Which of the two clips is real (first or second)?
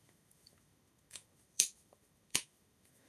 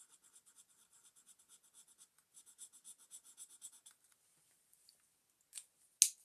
second